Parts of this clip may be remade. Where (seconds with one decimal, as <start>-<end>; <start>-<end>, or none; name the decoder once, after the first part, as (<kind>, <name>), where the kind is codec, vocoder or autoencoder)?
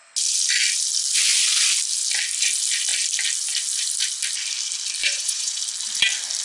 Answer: 5.0-5.6 (vocoder, Vocos)